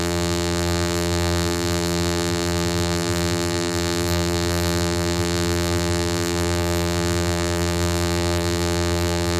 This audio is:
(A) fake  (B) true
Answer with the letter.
A